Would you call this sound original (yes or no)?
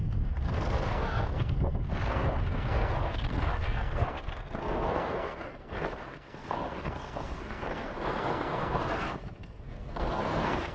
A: no